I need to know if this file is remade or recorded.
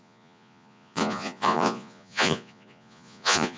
remade